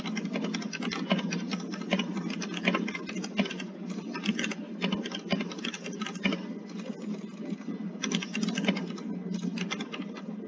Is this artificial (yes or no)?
no